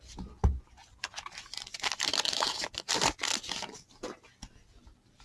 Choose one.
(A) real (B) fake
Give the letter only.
A